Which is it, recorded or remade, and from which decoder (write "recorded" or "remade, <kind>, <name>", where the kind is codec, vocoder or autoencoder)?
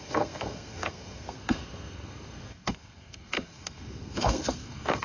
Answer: remade, codec, SNAC